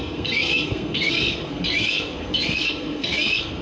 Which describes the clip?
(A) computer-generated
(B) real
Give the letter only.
A